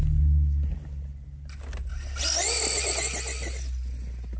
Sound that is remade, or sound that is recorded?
recorded